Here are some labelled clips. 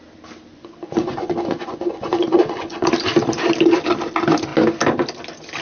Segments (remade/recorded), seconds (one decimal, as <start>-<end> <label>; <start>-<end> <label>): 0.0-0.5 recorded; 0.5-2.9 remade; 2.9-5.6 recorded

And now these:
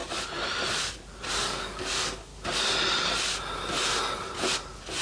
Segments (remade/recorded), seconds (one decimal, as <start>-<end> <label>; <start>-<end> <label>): 0.0-1.3 recorded; 1.3-2.3 remade; 2.3-5.0 recorded

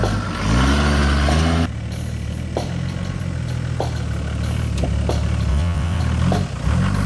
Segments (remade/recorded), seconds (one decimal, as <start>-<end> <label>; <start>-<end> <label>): 0.0-5.5 recorded; 5.5-6.0 remade; 6.0-7.1 recorded

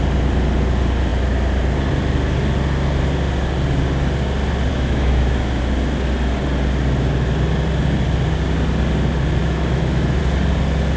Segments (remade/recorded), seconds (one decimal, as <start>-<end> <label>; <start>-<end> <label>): 0.0-4.7 recorded; 4.7-5.6 remade; 5.6-9.4 recorded; 9.4-10.2 remade; 10.2-11.0 recorded

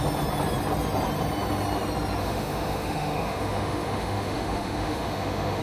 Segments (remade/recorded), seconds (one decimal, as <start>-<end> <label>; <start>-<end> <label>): 0.0-2.2 recorded; 2.2-5.6 remade

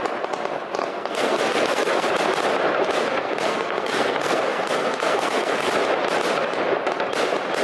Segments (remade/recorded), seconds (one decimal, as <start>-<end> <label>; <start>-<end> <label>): 0.0-0.8 recorded; 0.8-2.1 remade; 2.1-3.1 recorded; 3.1-5.7 remade; 5.7-7.6 recorded